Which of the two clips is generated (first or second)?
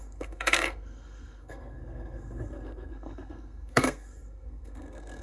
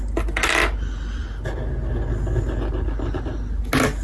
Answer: first